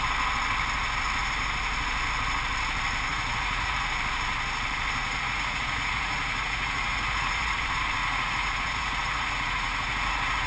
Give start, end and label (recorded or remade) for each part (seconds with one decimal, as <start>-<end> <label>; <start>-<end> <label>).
0.0-3.1 recorded; 3.1-3.9 remade; 3.9-5.0 recorded; 5.0-7.6 remade; 7.6-8.0 recorded; 8.0-10.5 remade